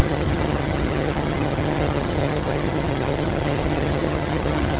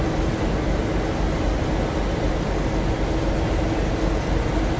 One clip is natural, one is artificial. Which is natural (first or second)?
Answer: second